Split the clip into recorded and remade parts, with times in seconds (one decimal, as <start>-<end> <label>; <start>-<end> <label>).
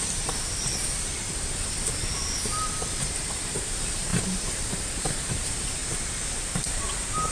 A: 0.0-0.7 remade; 0.7-3.0 recorded; 3.0-5.8 remade; 5.8-7.3 recorded